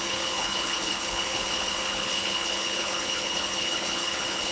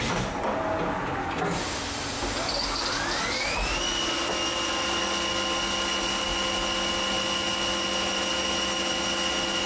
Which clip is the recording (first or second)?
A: second